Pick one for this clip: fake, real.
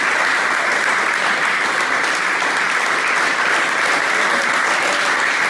real